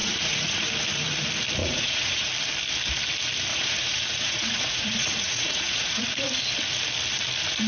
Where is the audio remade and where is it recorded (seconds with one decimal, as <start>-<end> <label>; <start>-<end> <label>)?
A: 0.0-0.7 remade; 0.7-1.6 recorded; 1.6-2.3 remade; 2.3-3.5 recorded; 3.5-6.4 remade; 6.4-7.7 recorded